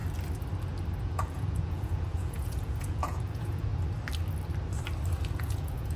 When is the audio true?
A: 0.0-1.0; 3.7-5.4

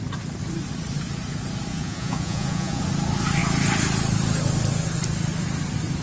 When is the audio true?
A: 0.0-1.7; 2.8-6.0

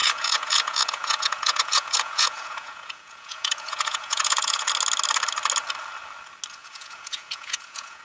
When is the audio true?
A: 4.7-6.6